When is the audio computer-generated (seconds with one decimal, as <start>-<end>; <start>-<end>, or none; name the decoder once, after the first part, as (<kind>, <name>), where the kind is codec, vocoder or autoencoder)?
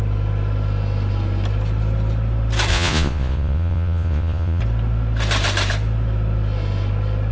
2.7-4.6 (vocoder, Vocos)